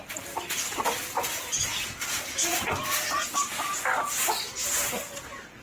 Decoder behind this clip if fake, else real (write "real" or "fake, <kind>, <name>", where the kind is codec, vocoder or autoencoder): real